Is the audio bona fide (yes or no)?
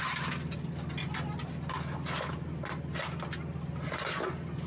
yes